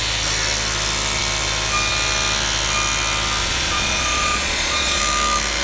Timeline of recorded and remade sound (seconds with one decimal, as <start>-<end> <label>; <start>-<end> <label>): 0.0-3.4 recorded; 3.4-5.0 remade; 5.0-5.6 recorded